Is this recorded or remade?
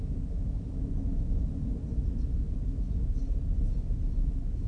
recorded